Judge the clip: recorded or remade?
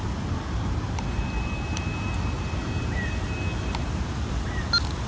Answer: recorded